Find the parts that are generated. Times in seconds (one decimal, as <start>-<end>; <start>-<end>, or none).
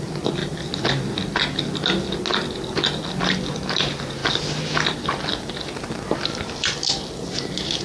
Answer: none